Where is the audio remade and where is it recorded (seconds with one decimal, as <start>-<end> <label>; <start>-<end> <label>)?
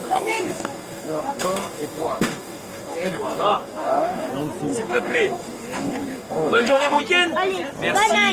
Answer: 0.0-4.3 remade; 4.3-4.7 recorded; 4.7-7.0 remade; 7.0-8.3 recorded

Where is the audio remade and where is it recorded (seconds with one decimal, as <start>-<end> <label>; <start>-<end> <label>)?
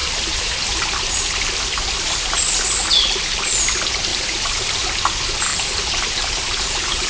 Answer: 0.0-1.0 remade; 1.0-4.1 recorded; 4.1-5.0 remade; 5.0-5.5 recorded; 5.5-7.1 remade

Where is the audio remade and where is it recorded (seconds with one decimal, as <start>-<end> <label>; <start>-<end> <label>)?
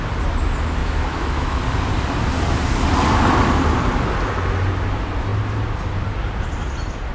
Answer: 0.0-0.8 recorded; 0.8-1.6 remade; 1.6-7.1 recorded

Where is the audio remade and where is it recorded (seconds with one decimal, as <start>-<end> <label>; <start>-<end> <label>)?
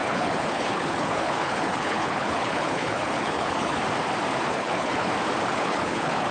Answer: 0.0-3.8 remade; 3.8-4.5 recorded; 4.5-5.1 remade; 5.1-5.5 recorded; 5.5-6.3 remade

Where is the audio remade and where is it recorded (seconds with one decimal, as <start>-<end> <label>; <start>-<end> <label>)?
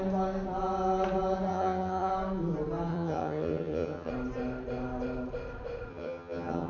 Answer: 0.0-1.5 recorded; 1.5-2.1 remade; 2.1-2.9 recorded; 2.9-4.1 remade; 4.1-5.9 recorded; 5.9-6.7 remade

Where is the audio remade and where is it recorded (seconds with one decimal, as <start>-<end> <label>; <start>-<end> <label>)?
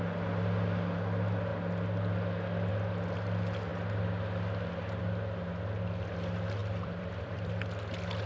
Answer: 0.0-6.6 recorded; 6.6-7.5 remade; 7.5-8.3 recorded